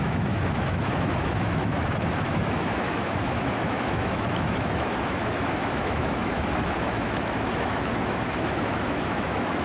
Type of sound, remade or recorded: remade